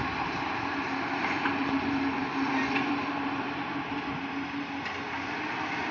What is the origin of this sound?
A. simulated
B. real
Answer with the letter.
A